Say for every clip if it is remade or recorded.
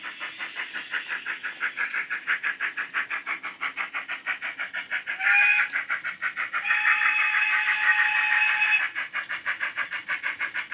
recorded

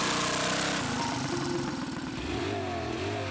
recorded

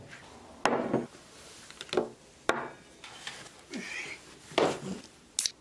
recorded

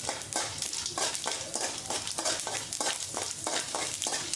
remade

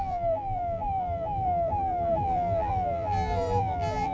remade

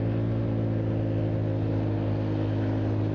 recorded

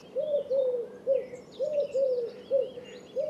remade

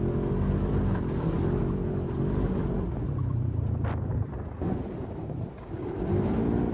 remade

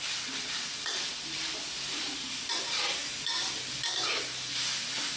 recorded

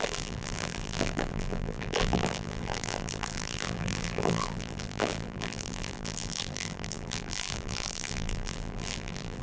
remade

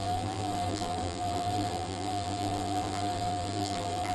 remade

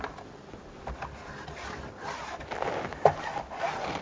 recorded